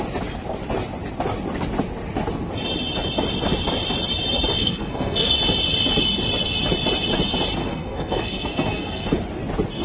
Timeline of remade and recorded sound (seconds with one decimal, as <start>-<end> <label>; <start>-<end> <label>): 0.0-4.6 recorded; 4.6-5.3 remade; 5.3-7.6 recorded; 7.6-9.0 remade; 9.0-9.8 recorded